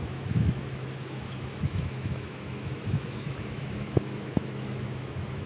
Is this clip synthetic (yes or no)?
yes